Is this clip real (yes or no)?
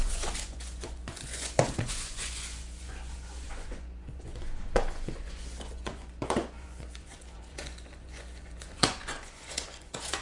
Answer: no